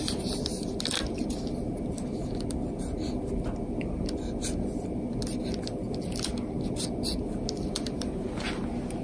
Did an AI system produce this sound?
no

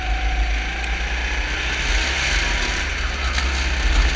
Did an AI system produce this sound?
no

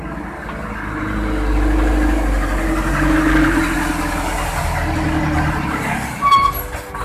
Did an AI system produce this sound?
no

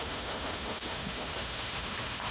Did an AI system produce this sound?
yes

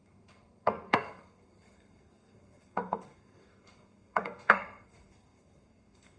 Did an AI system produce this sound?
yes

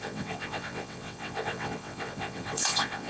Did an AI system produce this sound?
yes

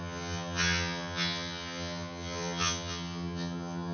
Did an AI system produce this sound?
yes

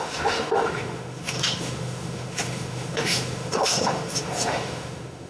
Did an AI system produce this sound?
yes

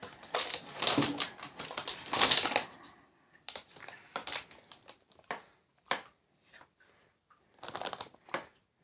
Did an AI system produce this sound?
no